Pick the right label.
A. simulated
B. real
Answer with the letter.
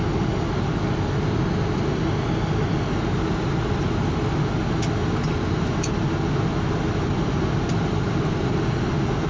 B